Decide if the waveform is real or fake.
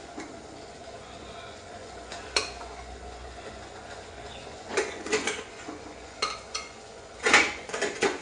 fake